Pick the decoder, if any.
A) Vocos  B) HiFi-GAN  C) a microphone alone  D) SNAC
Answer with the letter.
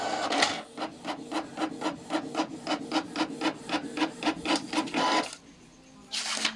C